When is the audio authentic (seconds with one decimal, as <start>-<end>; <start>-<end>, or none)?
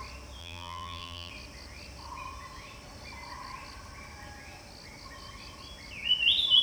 0.0-0.4; 1.3-6.6